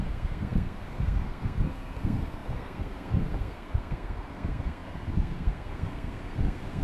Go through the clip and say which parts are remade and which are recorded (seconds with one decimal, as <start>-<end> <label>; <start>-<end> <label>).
0.0-6.8 remade